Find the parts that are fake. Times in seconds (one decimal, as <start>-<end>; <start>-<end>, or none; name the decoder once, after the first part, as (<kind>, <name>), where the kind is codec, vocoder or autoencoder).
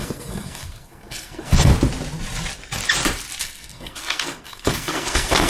0.0-1.7 (codec, SNAC); 3.4-5.5